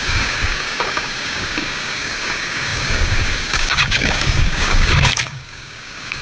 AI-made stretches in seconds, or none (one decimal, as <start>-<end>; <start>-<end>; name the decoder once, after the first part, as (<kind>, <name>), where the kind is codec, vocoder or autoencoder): 0.0-6.2 (codec, DAC)